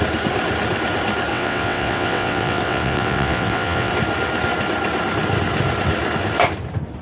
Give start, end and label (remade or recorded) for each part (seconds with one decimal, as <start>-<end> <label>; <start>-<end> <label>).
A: 0.0-1.3 recorded; 1.3-3.9 remade; 3.9-7.0 recorded